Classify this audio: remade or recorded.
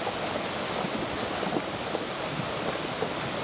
recorded